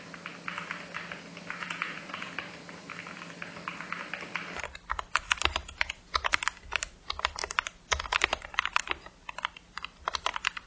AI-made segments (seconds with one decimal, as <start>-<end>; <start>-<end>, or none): 1.6-2.3; 5.6-6.3